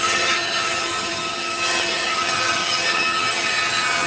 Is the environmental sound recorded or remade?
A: remade